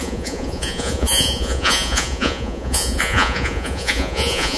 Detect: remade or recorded remade